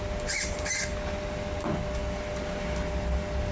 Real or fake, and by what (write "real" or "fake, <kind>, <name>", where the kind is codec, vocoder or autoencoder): fake, vocoder, BigVGAN v2